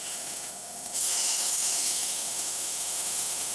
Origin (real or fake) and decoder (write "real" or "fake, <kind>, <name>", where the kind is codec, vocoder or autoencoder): fake, autoencoder, DAC-VAE